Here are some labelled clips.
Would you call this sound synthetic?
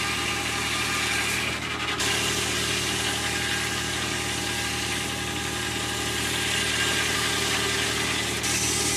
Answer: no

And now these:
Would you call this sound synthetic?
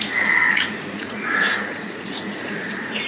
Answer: yes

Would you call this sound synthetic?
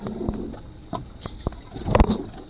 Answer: no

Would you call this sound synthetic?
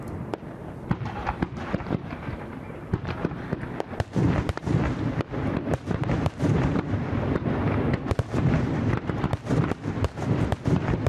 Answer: yes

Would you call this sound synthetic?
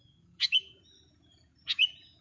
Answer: yes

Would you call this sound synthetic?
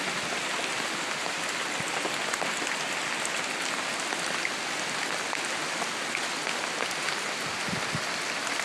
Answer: no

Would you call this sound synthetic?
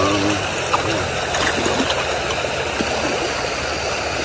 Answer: no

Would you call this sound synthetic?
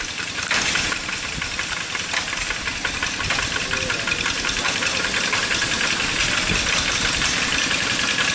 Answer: no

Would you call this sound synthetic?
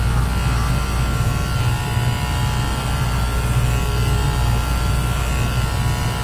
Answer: no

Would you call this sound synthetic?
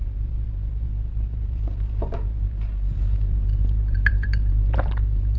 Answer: yes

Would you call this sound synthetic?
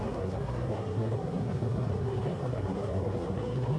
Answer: yes